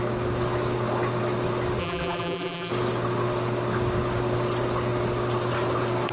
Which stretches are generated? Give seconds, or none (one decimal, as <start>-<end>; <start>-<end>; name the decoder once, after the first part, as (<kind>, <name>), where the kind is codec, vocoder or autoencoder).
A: 1.8-2.7 (vocoder, BigVGAN v2)